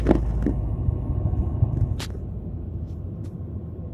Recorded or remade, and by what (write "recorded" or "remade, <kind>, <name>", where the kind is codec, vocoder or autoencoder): recorded